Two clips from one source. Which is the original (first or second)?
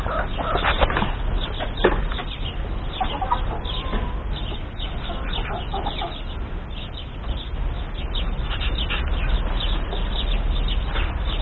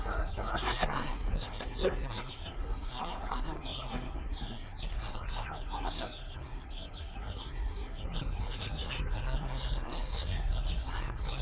first